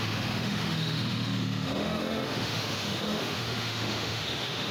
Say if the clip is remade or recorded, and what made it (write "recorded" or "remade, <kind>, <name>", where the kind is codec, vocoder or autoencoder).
remade, autoencoder, DAC-VAE